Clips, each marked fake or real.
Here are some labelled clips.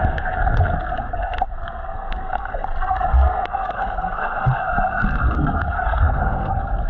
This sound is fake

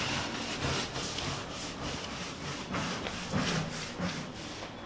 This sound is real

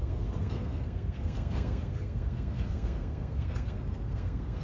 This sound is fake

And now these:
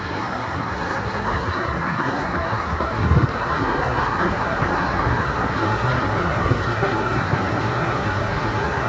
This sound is fake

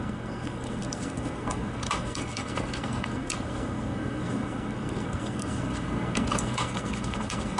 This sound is fake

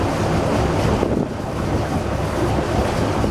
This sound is real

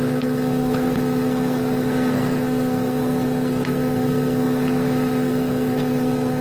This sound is fake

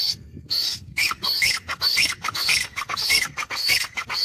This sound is fake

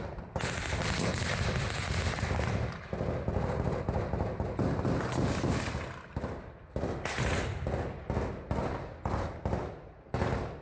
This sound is real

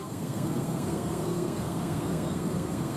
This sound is fake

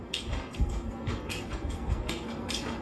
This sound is fake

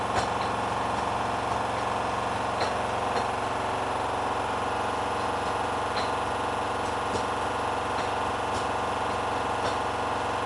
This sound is real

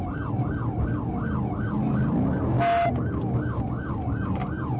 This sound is real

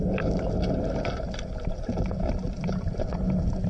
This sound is real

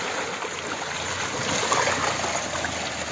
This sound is real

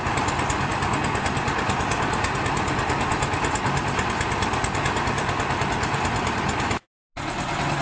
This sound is real